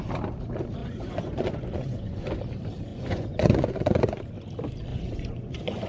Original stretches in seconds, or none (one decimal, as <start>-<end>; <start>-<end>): 0.0-0.8; 2.3-2.9; 4.2-4.9